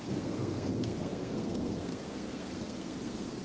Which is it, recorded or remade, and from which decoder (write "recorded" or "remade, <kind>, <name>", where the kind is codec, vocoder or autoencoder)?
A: remade, codec, SNAC